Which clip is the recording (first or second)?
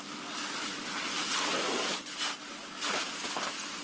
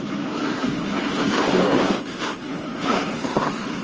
first